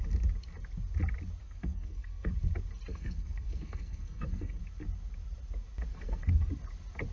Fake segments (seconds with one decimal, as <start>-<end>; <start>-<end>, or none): 1.4-2.3; 2.9-4.6; 5.9-6.5